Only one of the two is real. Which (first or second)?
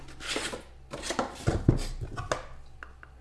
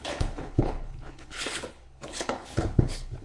first